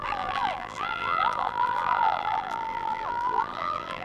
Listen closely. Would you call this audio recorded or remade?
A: remade